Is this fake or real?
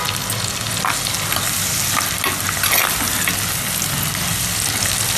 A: real